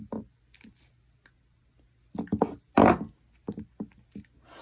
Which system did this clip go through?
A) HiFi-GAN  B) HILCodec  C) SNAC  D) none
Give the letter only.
D